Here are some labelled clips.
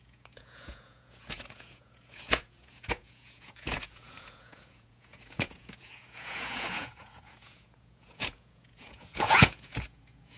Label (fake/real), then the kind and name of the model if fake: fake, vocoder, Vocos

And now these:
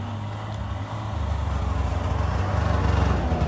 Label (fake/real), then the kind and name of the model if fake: real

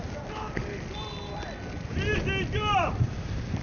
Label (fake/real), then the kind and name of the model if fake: real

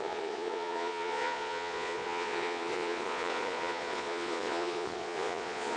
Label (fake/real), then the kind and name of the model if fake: fake, vocoder, Vocos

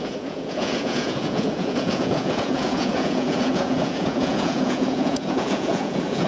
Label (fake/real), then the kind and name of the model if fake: fake, vocoder, Vocos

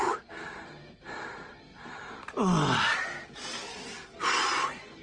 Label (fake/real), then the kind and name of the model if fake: real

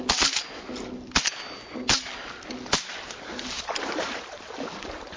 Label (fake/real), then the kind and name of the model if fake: real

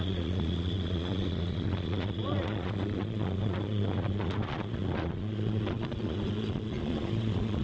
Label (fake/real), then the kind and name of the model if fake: fake, vocoder, Vocos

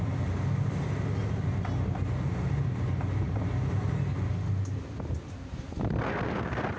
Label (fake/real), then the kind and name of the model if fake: real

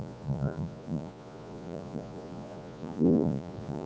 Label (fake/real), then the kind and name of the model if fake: fake, vocoder, Vocos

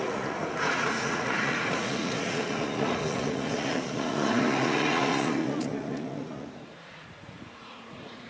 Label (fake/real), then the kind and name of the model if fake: fake, vocoder, Vocos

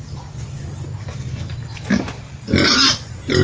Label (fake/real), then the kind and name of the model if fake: real